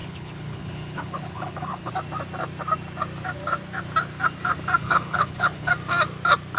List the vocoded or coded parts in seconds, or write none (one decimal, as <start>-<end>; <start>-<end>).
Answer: 0.0-1.9; 4.8-5.7